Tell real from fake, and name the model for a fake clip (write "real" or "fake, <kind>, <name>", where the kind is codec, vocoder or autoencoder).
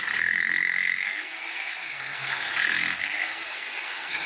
fake, codec, SNAC